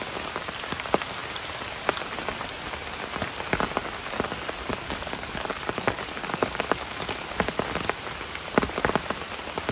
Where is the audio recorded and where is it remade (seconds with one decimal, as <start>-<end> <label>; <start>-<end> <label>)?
0.0-4.7 recorded; 4.7-7.1 remade; 7.1-9.7 recorded